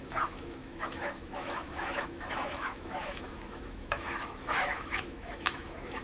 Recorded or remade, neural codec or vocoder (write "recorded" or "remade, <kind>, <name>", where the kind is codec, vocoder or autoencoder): remade, autoencoder, DAC-VAE